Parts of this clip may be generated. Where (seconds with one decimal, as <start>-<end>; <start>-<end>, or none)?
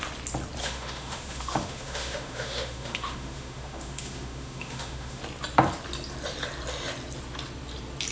0.6-5.2